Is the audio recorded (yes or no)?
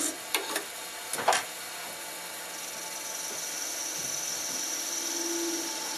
yes